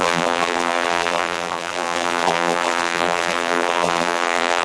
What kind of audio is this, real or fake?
fake